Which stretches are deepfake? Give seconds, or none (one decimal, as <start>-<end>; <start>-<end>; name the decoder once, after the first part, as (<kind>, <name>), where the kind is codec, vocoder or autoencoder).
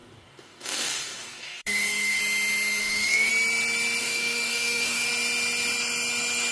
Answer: 0.0-2.2 (codec, DAC); 2.8-3.3; 4.0-5.1